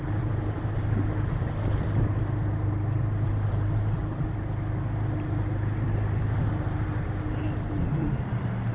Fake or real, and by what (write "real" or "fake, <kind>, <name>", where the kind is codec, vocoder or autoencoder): real